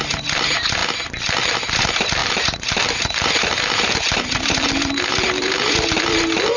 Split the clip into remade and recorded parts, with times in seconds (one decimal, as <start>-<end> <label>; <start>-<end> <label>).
0.0-0.8 remade; 0.8-1.6 recorded; 1.6-6.6 remade